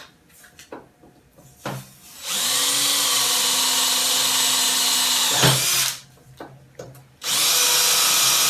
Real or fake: real